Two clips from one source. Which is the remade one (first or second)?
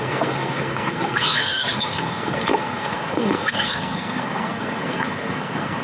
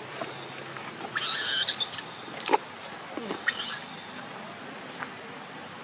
first